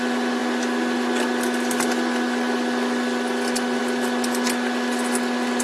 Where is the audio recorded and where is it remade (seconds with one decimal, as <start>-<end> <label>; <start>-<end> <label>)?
0.0-5.6 recorded